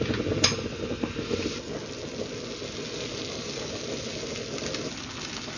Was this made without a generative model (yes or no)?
yes